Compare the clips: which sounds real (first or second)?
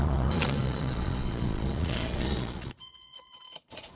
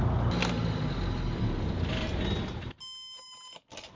second